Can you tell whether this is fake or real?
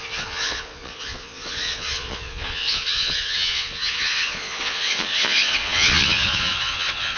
fake